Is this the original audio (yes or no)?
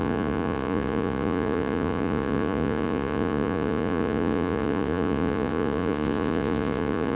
no